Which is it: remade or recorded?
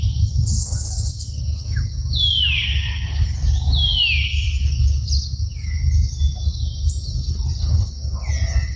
recorded